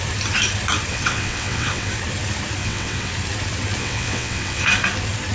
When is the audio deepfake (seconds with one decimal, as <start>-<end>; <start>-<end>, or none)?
0.9-1.9; 2.6-3.1; 3.8-4.7